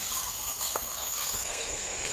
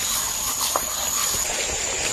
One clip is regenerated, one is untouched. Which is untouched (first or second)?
second